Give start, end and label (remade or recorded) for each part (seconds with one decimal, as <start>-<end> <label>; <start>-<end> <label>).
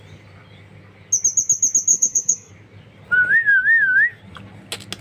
0.0-1.9 recorded; 1.9-2.5 remade; 2.5-3.5 recorded; 3.5-4.2 remade; 4.2-5.0 recorded